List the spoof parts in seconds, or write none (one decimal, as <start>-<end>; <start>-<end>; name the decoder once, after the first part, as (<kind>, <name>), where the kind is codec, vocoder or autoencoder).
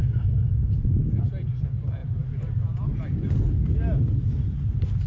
0.0-0.7 (codec, DAC)